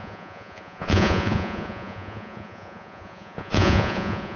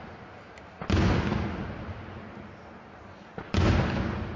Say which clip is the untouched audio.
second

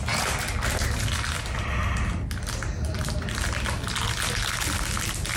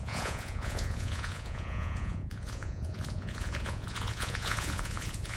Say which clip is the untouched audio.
first